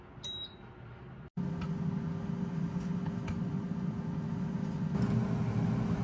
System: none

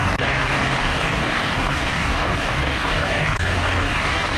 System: codec, DAC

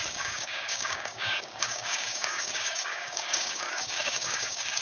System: codec, DAC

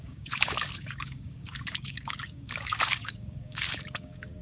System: codec, DAC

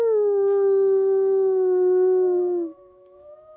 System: codec, DAC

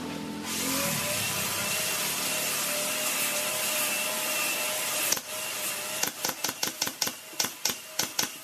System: none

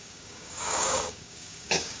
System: codec, DAC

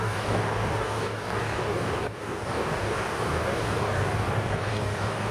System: codec, DAC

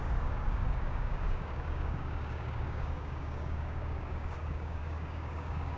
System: codec, DAC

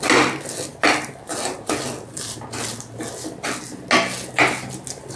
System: none